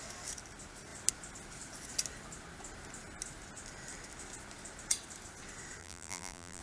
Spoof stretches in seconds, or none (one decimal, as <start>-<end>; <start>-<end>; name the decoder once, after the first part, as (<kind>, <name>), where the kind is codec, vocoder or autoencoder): 5.8-6.6 (vocoder, BigVGAN v2)